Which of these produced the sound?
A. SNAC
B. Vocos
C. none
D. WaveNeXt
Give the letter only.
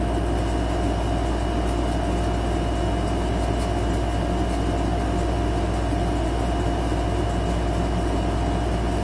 C